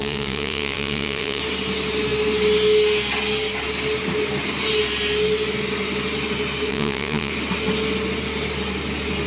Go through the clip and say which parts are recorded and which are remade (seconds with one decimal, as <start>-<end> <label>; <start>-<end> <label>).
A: 0.0-1.4 remade; 1.4-6.7 recorded; 6.7-7.3 remade; 7.3-9.3 recorded